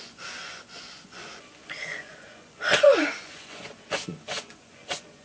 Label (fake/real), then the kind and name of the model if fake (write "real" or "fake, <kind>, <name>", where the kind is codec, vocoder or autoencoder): fake, vocoder, Vocos